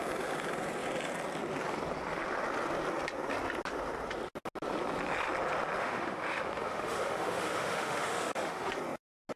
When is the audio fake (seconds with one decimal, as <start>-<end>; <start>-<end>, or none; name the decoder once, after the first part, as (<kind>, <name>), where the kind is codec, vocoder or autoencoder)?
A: 5.8-8.7 (autoencoder, DAC-VAE)